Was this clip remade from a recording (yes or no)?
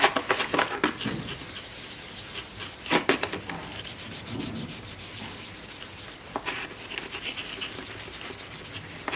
no